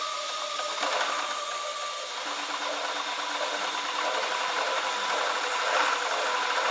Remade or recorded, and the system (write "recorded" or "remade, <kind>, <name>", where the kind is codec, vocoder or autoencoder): recorded